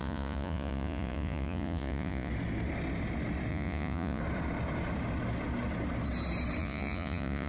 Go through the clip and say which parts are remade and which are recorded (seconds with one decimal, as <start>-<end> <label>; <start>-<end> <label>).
0.0-2.3 remade; 2.3-3.5 recorded; 3.5-4.2 remade; 4.2-6.6 recorded; 6.6-7.5 remade

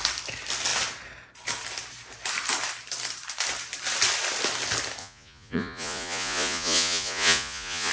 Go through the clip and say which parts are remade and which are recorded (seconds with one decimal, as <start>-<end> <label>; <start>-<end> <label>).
0.0-5.0 recorded; 5.0-7.9 remade

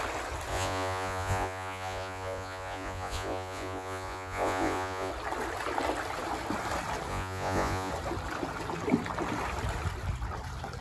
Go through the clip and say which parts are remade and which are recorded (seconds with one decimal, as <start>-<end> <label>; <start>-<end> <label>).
0.0-0.5 recorded; 0.5-5.1 remade; 5.1-7.1 recorded; 7.1-7.9 remade; 7.9-10.8 recorded

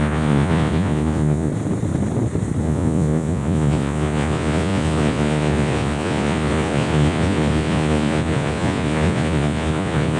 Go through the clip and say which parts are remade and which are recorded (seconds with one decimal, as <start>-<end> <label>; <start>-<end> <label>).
0.0-1.5 remade; 1.5-2.6 recorded; 2.6-10.2 remade

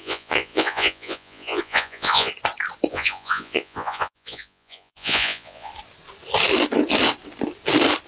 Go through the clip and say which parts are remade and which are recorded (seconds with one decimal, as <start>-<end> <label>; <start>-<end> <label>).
0.0-2.3 remade; 2.3-2.9 recorded; 2.9-5.7 remade; 5.7-8.1 recorded

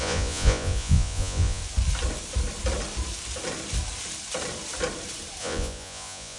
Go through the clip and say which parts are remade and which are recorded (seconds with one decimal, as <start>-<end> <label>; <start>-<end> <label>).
0.0-1.6 remade; 1.6-5.4 recorded; 5.4-6.4 remade